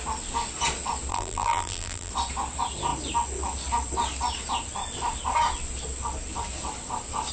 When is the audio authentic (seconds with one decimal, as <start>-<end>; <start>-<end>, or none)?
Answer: 0.0-1.1; 2.1-7.3